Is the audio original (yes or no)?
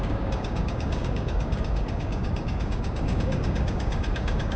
no